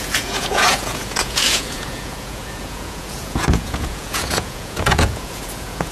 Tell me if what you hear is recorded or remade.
remade